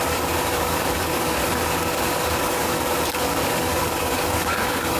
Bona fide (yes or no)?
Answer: no